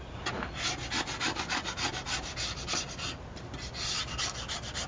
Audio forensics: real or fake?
real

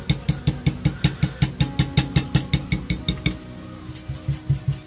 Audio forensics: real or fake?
real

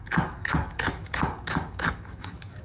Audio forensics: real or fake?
fake